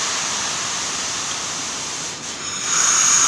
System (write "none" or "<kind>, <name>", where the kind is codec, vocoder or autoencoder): none